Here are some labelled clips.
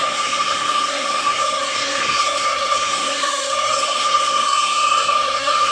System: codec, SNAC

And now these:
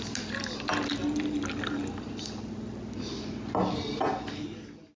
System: none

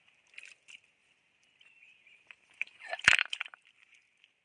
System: vocoder, BigVGAN v2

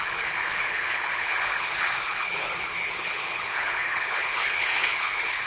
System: codec, HILCodec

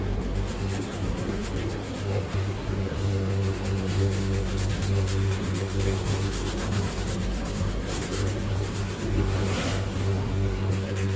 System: codec, SNAC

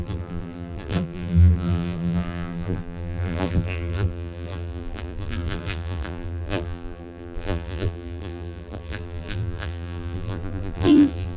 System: vocoder, BigVGAN v2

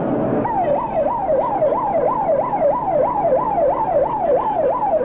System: none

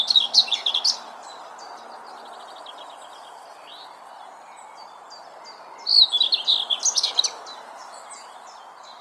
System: none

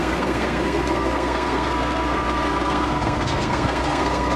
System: codec, SNAC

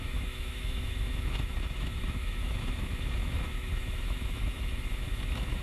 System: autoencoder, DAC-VAE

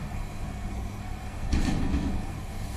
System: codec, SNAC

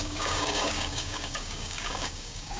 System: codec, DAC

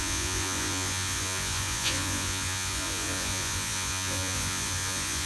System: vocoder, Vocos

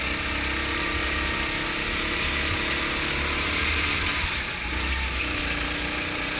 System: none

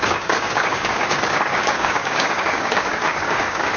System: codec, DAC